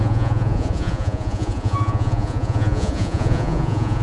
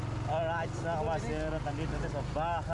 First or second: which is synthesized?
first